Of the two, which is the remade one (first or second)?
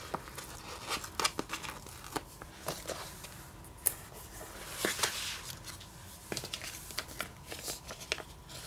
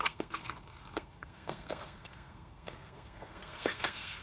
second